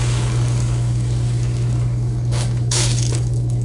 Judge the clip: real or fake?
fake